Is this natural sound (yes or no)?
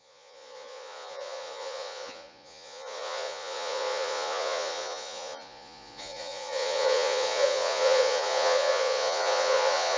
no